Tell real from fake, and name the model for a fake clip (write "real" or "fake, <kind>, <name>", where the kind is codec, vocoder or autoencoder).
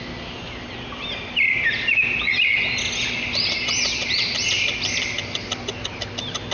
real